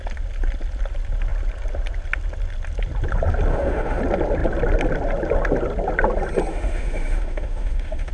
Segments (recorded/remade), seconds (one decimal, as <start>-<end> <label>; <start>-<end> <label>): 0.0-3.5 recorded; 3.5-4.0 remade; 4.0-6.5 recorded; 6.5-8.1 remade